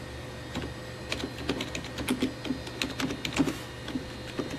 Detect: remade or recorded recorded